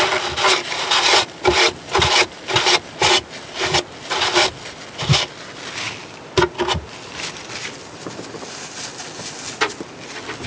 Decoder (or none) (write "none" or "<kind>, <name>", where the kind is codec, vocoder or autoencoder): none